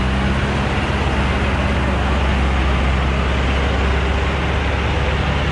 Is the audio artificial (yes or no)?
no